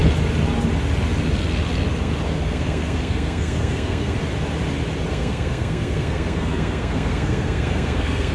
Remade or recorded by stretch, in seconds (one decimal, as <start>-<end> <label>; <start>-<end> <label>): 0.0-2.0 recorded; 2.0-4.2 remade; 4.2-5.1 recorded; 5.1-8.3 remade